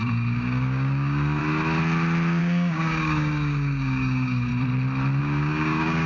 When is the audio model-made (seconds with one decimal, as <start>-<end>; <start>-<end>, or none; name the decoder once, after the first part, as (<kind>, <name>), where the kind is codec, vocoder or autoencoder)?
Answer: 0.0-1.4 (codec, DAC); 2.4-4.5; 5.2-6.1